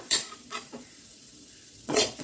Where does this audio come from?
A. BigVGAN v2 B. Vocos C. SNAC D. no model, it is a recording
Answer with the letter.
B